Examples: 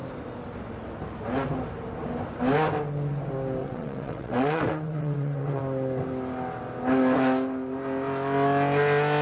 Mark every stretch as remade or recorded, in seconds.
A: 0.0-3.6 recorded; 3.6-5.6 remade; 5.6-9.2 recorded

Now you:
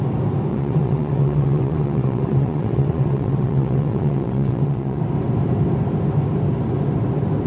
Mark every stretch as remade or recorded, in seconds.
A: 0.0-0.5 recorded; 0.5-5.0 remade; 5.0-7.5 recorded

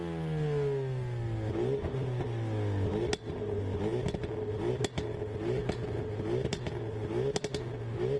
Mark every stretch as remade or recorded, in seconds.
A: 0.0-8.2 recorded

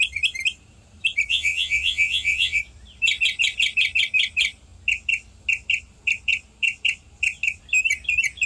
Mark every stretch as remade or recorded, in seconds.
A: 0.0-1.3 recorded; 1.3-2.6 remade; 2.6-8.5 recorded

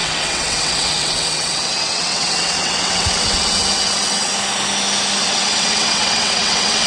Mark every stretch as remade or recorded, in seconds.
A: 0.0-4.3 remade; 4.3-5.2 recorded; 5.2-6.9 remade

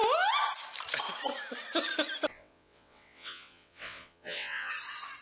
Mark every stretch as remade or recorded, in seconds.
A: 0.0-2.3 recorded; 2.3-4.7 remade; 4.7-5.2 recorded

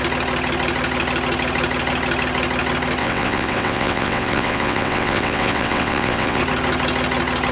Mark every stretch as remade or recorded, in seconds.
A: 0.0-3.0 recorded; 3.0-6.4 remade; 6.4-7.5 recorded

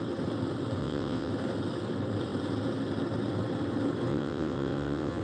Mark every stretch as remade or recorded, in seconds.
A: 0.0-0.8 recorded; 0.8-1.3 remade; 1.3-4.1 recorded; 4.1-5.2 remade